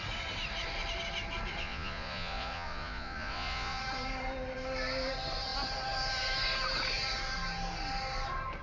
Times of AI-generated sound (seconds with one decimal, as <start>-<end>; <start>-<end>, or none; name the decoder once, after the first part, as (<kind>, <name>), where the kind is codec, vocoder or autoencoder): 1.6-3.8 (vocoder, Vocos)